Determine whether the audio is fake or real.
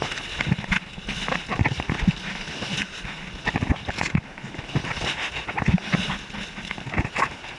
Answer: real